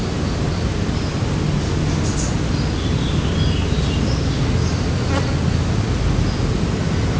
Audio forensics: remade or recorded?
recorded